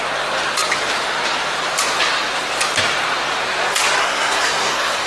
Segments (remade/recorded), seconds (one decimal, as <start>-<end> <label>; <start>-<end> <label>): 0.0-4.0 recorded; 4.0-5.1 remade